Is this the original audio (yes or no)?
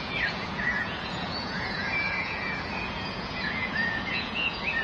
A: no